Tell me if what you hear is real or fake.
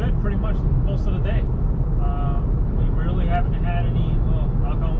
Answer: real